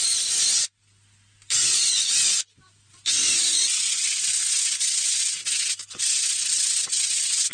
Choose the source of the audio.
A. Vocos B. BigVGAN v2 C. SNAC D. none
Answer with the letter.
D